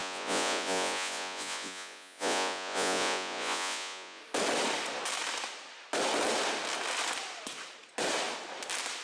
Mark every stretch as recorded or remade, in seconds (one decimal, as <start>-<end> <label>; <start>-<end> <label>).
0.0-4.2 remade; 4.2-9.0 recorded